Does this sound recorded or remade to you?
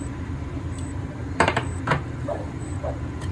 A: remade